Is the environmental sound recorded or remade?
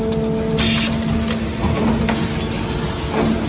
recorded